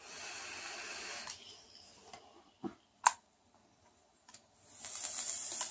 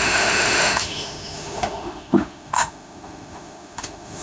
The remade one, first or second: second